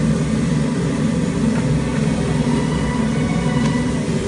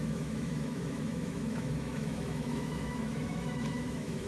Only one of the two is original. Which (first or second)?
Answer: first